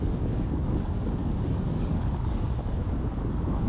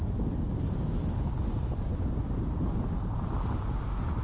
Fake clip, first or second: first